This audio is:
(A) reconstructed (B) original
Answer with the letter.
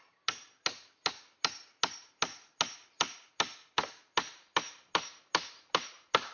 B